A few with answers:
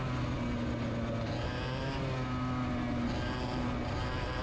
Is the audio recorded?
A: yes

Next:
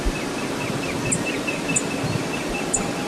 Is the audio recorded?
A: yes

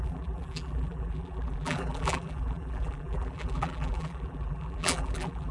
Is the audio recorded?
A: no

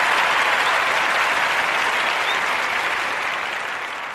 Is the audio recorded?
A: no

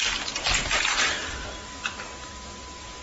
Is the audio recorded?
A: yes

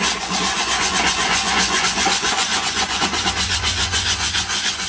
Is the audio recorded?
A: no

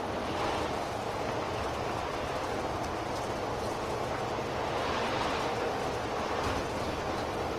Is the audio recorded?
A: yes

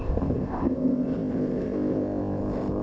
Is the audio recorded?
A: no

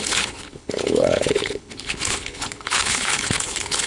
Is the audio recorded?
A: no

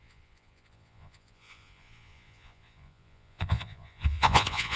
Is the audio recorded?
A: no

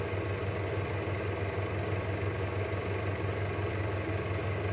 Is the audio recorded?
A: yes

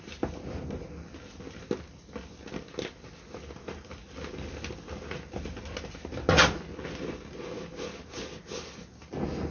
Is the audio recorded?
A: yes